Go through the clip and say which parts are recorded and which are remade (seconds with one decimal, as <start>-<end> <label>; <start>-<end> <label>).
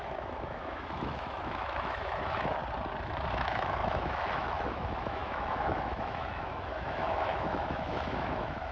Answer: 0.0-2.6 remade; 2.6-3.3 recorded; 3.3-8.7 remade